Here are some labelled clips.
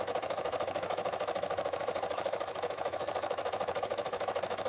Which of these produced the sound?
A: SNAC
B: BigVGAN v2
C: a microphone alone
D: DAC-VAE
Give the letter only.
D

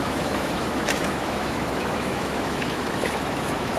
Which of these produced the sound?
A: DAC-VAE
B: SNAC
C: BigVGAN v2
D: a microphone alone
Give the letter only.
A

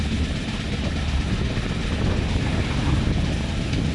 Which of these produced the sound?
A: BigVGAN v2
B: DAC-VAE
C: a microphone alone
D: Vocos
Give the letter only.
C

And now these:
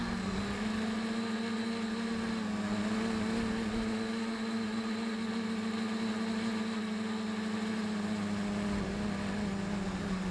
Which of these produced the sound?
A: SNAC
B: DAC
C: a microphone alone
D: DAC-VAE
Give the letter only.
C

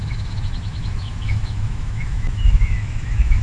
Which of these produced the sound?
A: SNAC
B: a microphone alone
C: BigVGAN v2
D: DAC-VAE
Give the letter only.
D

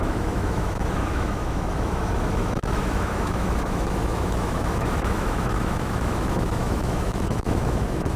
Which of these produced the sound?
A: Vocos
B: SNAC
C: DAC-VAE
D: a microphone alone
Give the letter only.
C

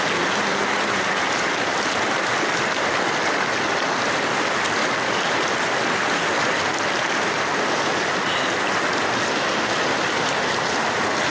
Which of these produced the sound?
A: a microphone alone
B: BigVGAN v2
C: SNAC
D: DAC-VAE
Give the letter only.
A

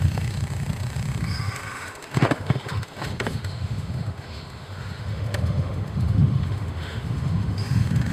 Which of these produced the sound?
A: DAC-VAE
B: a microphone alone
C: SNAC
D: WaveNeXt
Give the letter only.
A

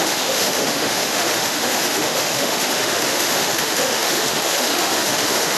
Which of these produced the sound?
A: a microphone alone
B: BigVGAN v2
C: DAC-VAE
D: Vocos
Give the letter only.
C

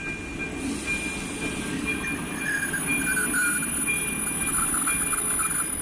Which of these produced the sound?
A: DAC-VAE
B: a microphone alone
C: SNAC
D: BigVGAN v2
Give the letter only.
B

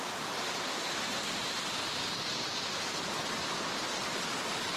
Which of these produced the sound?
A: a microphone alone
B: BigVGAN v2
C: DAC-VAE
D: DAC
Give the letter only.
A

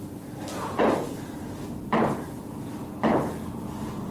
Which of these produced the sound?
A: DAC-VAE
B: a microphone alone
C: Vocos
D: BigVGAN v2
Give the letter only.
B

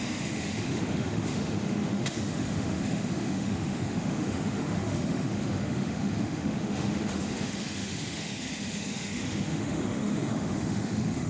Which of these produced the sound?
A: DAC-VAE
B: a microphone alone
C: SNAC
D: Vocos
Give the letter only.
A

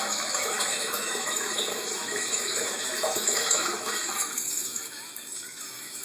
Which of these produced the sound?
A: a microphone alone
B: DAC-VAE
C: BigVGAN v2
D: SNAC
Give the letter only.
B